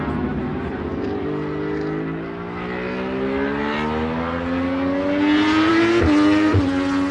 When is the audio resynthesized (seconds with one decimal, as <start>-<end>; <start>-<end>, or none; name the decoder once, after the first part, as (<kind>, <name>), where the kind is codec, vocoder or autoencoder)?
none